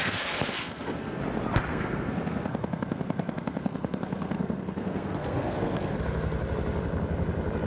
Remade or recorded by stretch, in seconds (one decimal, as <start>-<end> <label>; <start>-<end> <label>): 0.0-1.2 remade; 1.2-1.7 recorded; 1.7-6.0 remade; 6.0-7.7 recorded